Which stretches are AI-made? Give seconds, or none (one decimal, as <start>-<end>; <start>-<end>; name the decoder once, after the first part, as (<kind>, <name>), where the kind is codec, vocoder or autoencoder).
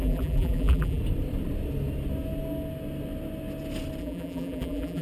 0.0-1.0 (vocoder, BigVGAN v2); 4.0-5.0